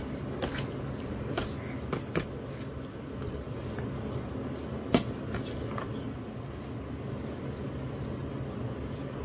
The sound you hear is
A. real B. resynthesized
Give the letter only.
A